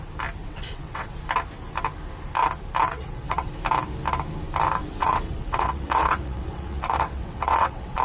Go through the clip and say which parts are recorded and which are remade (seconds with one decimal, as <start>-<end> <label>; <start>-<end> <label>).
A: 0.0-0.4 recorded; 0.4-1.2 remade; 1.2-2.9 recorded; 2.9-3.5 remade; 3.5-4.8 recorded; 4.8-8.0 remade